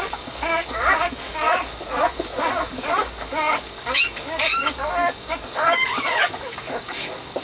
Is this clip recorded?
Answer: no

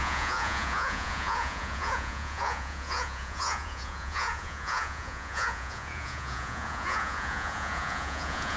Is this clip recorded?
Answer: no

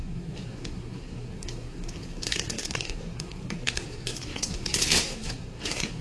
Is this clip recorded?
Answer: no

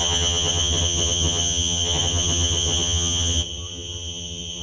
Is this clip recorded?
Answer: no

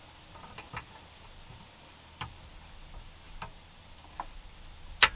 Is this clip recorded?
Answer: yes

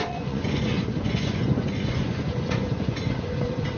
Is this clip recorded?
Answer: no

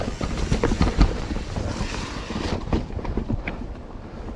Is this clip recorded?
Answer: no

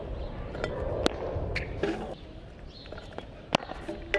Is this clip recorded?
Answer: yes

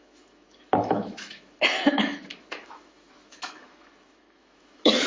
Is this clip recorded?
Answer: no